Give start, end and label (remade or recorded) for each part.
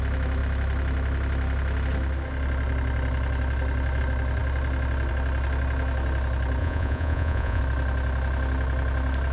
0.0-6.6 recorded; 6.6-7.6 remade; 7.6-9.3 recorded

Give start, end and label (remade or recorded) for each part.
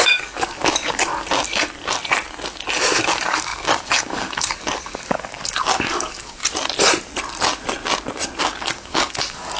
0.0-1.1 remade; 1.1-3.1 recorded; 3.1-6.4 remade; 6.4-8.4 recorded; 8.4-9.6 remade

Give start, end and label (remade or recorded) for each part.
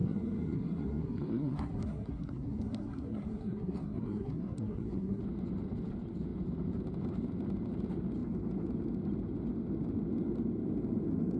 0.0-5.2 remade; 5.2-11.4 recorded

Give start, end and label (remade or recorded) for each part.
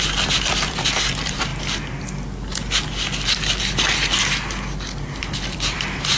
0.0-1.5 remade; 1.5-5.2 recorded; 5.2-6.2 remade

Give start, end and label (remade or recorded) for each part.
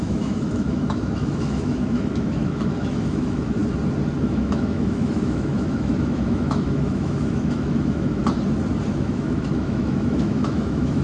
0.0-3.6 remade; 3.6-4.2 recorded; 4.2-8.2 remade; 8.2-8.9 recorded; 8.9-11.0 remade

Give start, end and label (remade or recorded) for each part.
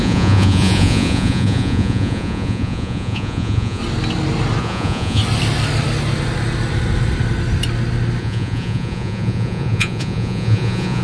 0.0-3.8 remade; 3.8-4.6 recorded; 4.6-5.2 remade; 5.2-8.2 recorded; 8.2-11.0 remade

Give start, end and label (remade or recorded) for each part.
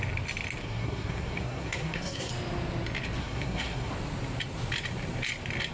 0.0-0.6 recorded; 0.6-2.3 remade; 2.3-3.2 recorded; 3.2-3.9 remade; 3.9-5.7 recorded